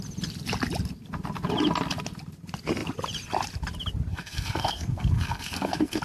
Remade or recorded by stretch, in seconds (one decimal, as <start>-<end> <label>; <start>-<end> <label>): 0.0-4.1 recorded; 4.1-6.0 remade